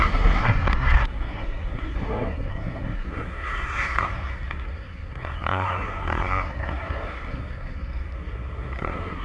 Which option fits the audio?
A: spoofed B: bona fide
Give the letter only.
A